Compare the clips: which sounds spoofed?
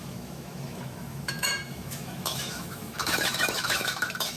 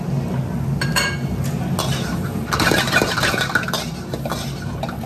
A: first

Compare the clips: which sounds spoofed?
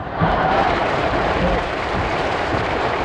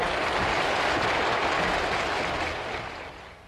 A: first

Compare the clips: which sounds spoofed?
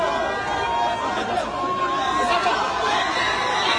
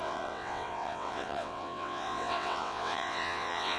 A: second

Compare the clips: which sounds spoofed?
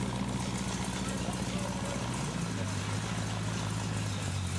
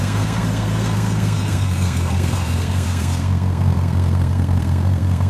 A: second